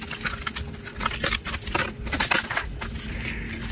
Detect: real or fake real